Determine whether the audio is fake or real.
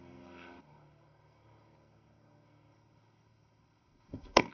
fake